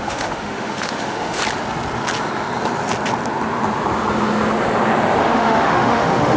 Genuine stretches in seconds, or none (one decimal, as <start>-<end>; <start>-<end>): 1.4-5.2